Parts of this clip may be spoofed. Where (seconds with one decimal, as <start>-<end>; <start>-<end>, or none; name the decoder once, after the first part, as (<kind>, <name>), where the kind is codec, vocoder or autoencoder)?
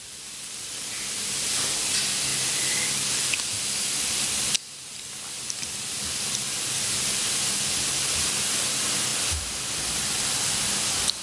none